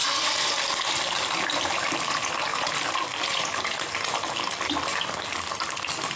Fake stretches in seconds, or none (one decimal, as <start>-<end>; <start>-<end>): none